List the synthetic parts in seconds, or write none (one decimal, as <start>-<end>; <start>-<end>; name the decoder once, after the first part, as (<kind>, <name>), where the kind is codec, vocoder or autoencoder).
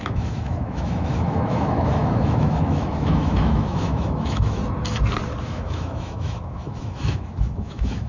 0.0-4.6 (autoencoder, DAC-VAE); 5.4-8.1